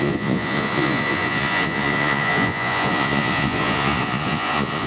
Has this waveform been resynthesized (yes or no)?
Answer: yes